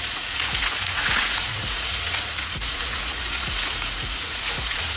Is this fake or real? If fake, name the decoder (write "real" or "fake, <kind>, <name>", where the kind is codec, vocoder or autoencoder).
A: fake, vocoder, Vocos